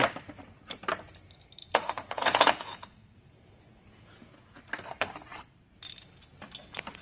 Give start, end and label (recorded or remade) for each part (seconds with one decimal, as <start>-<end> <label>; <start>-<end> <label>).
0.0-1.6 recorded; 1.6-4.6 remade; 4.6-7.0 recorded